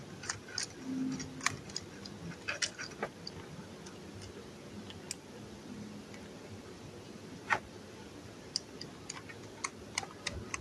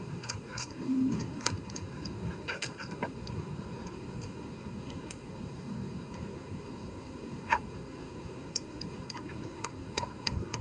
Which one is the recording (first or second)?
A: first